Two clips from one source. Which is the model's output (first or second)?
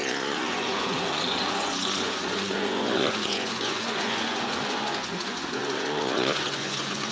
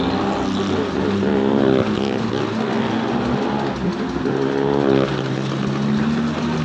first